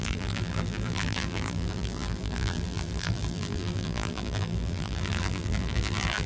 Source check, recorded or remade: remade